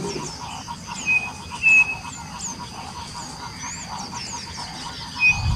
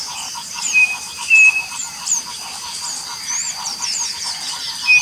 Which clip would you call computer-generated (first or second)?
second